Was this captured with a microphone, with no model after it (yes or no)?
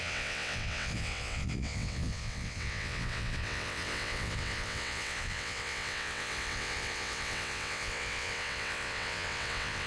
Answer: no